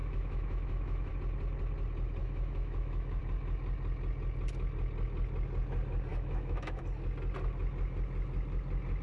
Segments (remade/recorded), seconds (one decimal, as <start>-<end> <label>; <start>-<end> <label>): 0.0-1.1 remade; 1.1-2.2 recorded; 2.2-3.2 remade; 3.2-6.1 recorded; 6.1-6.8 remade; 6.8-9.0 recorded